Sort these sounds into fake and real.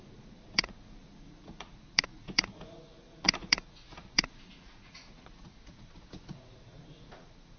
fake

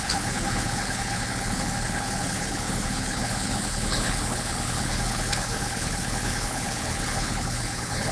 fake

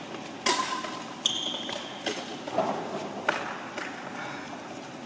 real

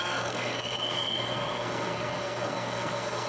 fake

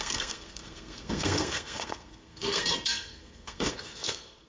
fake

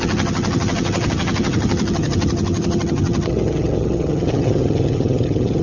fake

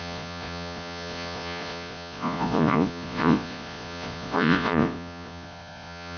fake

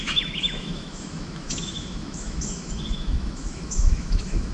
fake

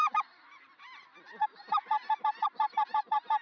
fake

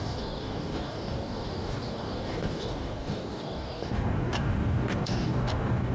fake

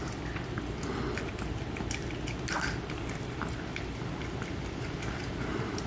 real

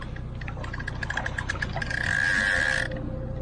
real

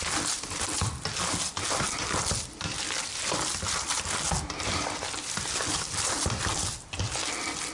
real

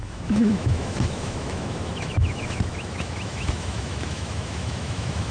fake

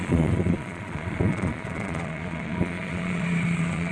fake